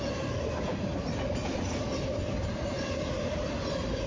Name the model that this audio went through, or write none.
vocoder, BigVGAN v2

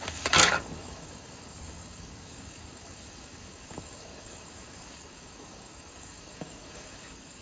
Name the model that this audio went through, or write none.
codec, DAC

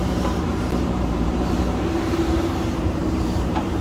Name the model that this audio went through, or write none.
vocoder, BigVGAN v2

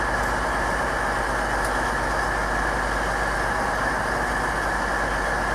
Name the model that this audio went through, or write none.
none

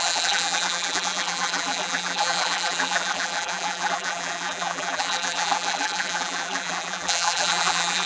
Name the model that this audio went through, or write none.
vocoder, BigVGAN v2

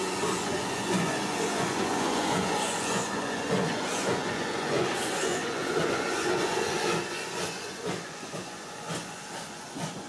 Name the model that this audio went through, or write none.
vocoder, Vocos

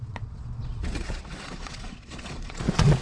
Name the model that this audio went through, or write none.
vocoder, Vocos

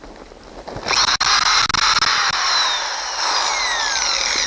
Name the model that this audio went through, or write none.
none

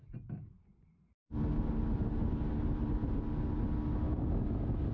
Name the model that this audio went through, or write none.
none